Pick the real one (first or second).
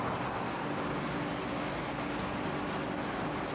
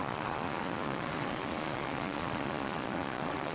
first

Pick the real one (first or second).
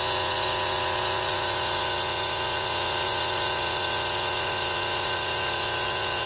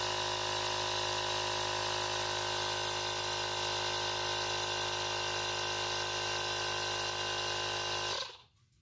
second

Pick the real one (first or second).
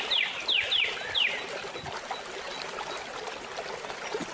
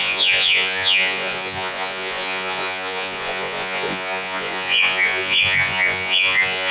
first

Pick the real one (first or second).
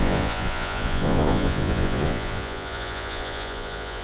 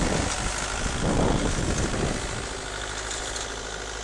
second